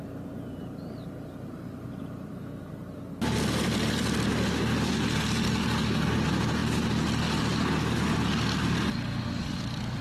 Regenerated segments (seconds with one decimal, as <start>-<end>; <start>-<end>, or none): none

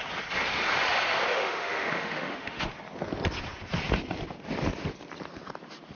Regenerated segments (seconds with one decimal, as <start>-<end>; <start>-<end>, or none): 1.3-2.7

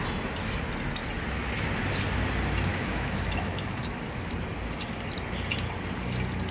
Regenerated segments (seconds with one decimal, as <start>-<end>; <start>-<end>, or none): 2.7-3.8

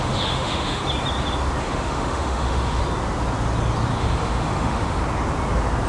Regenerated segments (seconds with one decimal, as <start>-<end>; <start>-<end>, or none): 0.0-0.8; 1.6-2.8; 4.0-5.0